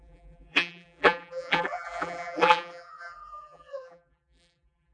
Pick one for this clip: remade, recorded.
remade